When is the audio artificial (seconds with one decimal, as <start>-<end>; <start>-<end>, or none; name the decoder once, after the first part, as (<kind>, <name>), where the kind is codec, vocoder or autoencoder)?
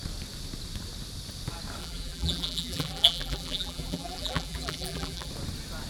1.8-5.3 (vocoder, BigVGAN v2)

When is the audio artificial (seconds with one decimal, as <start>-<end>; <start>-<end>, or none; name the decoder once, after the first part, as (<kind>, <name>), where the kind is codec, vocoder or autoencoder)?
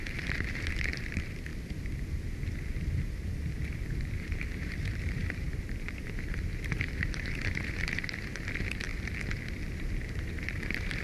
0.0-1.5 (vocoder, BigVGAN v2); 2.7-8.9; 9.7-11.0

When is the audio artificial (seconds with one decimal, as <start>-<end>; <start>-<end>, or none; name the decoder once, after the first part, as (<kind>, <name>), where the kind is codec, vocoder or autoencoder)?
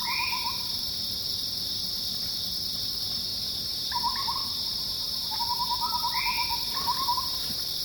0.0-1.1 (vocoder, BigVGAN v2); 3.3-7.8